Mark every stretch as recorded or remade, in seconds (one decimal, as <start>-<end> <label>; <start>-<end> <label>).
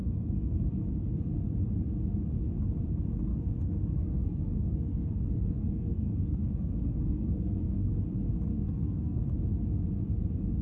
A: 0.0-0.6 remade; 0.6-3.3 recorded; 3.3-7.9 remade; 7.9-8.5 recorded; 8.5-9.2 remade; 9.2-10.6 recorded